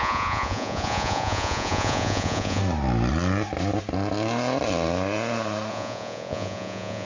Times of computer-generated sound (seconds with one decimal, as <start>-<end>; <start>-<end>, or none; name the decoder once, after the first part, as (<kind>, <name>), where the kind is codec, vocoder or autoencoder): 0.0-2.6 (vocoder, Vocos); 5.7-7.1